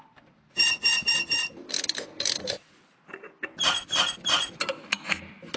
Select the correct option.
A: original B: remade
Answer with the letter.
A